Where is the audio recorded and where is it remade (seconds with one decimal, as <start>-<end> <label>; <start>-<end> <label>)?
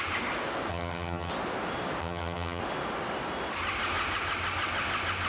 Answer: 0.0-0.7 recorded; 0.7-1.3 remade; 1.3-2.0 recorded; 2.0-2.6 remade; 2.6-5.3 recorded